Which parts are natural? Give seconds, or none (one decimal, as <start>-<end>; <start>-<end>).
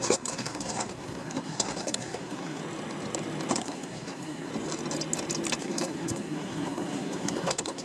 2.6-3.5; 4.5-5.6